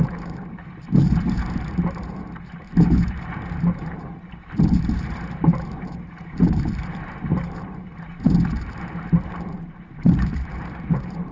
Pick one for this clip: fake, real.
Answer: fake